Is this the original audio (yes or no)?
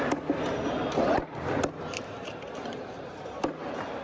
yes